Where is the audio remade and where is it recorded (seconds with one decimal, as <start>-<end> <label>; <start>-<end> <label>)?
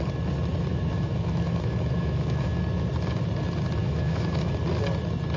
0.0-0.7 recorded; 0.7-2.6 remade; 2.6-3.8 recorded; 3.8-4.5 remade; 4.5-5.4 recorded